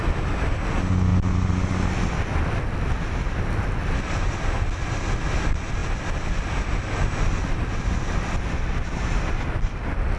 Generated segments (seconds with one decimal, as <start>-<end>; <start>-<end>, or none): none